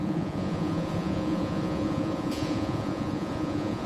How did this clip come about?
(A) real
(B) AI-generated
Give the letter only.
B